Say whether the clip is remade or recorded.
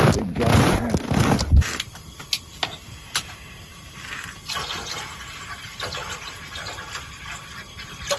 recorded